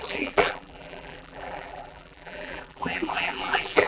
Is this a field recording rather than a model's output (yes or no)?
no